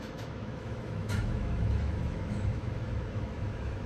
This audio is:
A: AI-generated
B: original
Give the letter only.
A